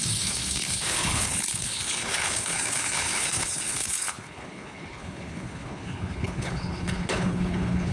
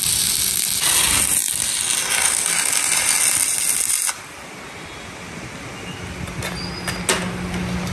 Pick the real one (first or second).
second